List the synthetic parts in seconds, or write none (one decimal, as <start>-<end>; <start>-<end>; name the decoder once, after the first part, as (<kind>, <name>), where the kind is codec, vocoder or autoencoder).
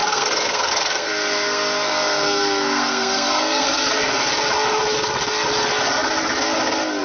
0.0-3.8 (codec, SNAC)